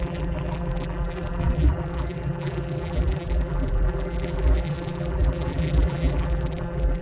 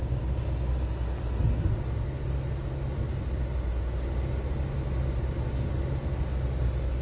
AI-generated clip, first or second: first